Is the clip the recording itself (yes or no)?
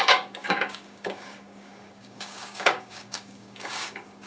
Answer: no